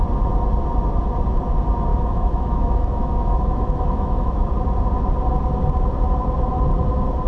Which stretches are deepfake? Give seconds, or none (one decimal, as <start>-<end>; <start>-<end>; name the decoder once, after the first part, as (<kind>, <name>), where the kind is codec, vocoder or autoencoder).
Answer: 1.9-4.5 (autoencoder, DAC-VAE)